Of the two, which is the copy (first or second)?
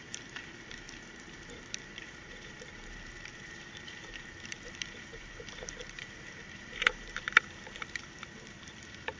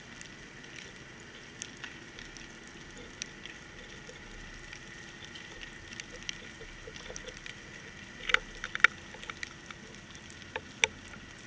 first